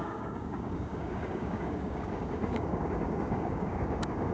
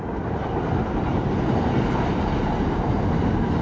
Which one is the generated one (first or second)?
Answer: first